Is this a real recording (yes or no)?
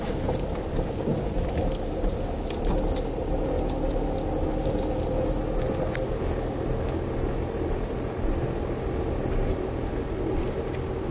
yes